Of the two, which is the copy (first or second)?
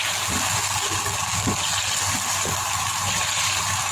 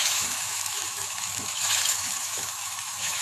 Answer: second